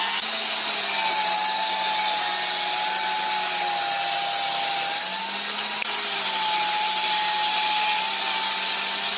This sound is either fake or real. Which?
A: real